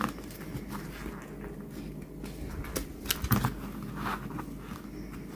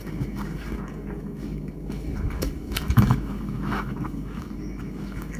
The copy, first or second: second